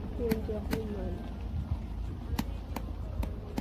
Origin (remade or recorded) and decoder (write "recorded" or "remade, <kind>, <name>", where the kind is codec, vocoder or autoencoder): recorded